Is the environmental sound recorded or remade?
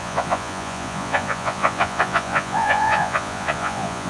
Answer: remade